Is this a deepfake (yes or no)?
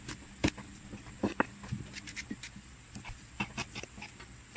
no